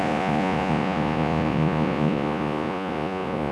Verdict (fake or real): fake